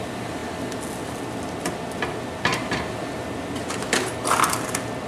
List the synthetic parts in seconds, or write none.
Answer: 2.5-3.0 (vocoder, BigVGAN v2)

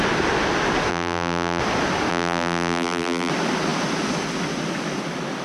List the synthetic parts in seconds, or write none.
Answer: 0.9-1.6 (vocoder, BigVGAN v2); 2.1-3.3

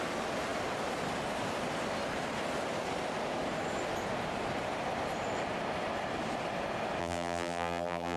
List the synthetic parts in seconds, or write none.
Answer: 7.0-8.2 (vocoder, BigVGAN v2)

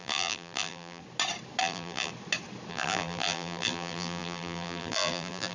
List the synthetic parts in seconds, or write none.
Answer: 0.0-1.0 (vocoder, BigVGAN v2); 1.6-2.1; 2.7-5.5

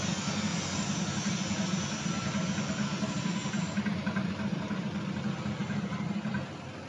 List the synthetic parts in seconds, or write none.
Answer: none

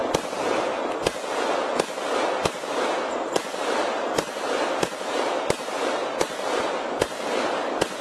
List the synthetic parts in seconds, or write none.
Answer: 2.4-7.2 (vocoder, BigVGAN v2)